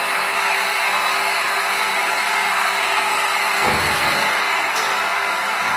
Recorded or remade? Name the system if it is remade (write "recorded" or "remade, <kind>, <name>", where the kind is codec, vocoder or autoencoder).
remade, codec, SNAC